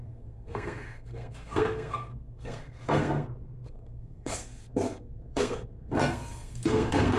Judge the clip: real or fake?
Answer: fake